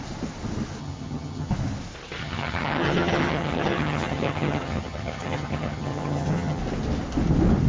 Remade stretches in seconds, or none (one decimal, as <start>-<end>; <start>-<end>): 0.8-1.5; 2.2-6.6